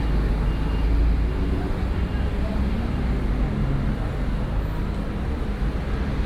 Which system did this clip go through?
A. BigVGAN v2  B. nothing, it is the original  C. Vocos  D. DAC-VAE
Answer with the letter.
B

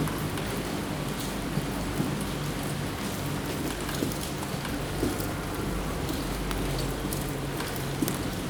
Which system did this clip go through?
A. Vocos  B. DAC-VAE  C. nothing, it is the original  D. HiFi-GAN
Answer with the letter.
C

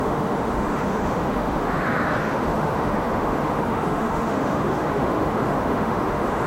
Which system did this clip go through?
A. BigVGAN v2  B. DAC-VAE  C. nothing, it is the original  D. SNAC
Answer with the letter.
B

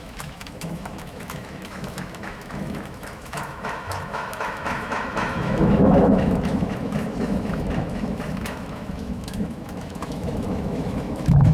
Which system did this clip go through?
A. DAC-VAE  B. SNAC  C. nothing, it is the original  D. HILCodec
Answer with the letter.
A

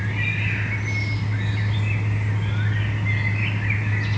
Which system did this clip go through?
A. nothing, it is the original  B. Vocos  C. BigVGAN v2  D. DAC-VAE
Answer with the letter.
A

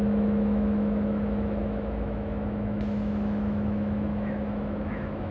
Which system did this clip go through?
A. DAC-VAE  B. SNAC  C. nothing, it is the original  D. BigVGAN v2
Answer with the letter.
A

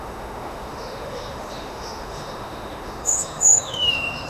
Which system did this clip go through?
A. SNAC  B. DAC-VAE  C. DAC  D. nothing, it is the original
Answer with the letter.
B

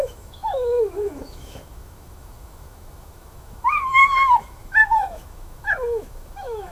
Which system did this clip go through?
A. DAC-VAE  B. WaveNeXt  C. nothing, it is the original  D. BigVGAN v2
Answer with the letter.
A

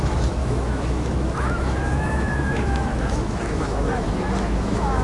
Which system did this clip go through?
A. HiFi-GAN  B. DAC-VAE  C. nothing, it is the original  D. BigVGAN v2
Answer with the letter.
B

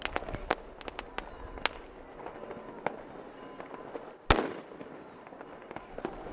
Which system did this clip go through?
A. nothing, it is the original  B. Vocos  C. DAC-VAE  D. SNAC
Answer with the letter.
A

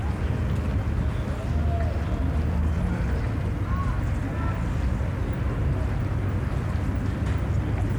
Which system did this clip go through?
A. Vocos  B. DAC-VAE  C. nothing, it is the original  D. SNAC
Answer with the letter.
C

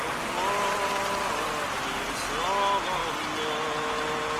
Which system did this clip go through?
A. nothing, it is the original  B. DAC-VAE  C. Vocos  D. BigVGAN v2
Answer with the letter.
A